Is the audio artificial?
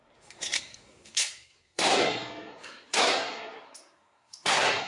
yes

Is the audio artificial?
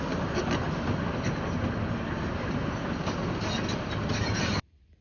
no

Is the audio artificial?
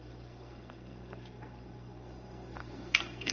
yes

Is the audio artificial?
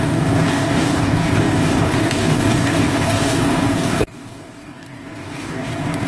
yes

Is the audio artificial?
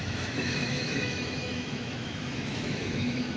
yes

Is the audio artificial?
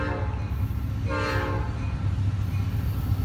no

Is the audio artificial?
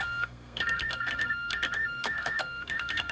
yes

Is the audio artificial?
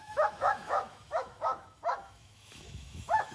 yes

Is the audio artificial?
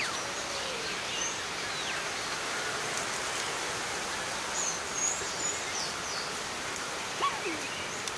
no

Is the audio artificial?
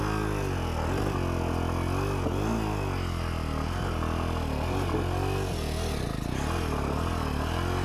no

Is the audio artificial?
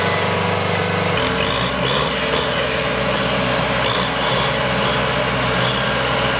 no